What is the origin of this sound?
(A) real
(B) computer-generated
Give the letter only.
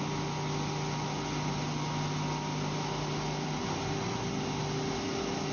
A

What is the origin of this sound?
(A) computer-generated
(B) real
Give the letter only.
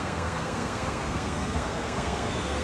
A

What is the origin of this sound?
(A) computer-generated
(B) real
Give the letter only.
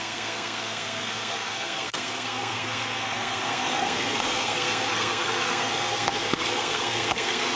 A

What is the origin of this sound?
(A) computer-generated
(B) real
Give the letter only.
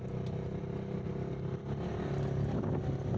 B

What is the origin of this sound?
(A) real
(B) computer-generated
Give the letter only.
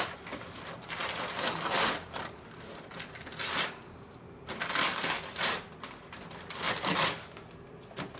A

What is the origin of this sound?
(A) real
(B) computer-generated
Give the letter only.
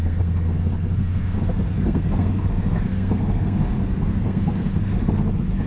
B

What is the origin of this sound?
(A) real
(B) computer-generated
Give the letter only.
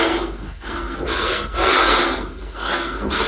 B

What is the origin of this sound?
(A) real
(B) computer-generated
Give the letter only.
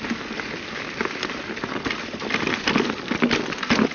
A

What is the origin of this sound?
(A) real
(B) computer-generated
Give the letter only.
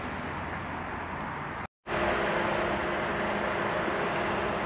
A